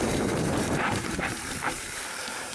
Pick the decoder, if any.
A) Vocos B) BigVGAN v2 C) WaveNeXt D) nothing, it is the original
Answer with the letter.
B